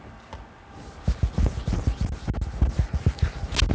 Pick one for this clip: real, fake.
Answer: real